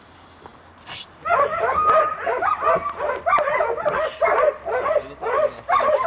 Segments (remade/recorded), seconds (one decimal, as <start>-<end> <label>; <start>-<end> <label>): 0.0-6.1 recorded